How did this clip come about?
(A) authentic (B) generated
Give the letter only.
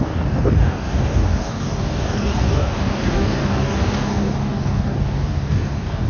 B